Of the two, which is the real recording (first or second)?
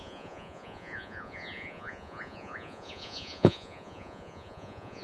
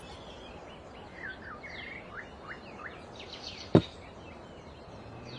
second